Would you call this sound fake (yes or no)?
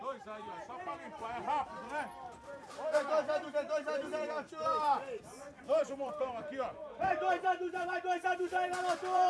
yes